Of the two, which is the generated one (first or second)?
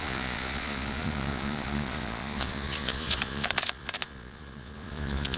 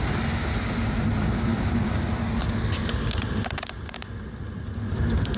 first